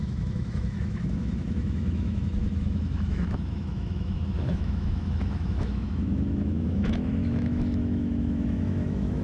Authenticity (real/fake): fake